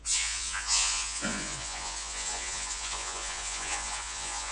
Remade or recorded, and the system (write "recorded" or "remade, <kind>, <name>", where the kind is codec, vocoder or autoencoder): remade, vocoder, Vocos